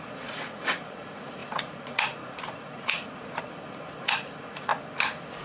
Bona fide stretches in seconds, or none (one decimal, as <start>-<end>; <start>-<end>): 4.7-5.4